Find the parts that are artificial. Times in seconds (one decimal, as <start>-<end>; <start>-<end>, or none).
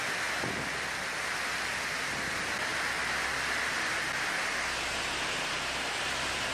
none